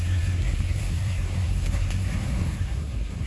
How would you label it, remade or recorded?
remade